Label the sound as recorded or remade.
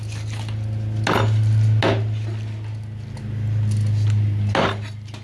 recorded